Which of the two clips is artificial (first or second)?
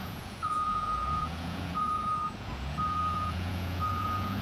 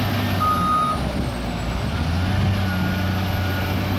first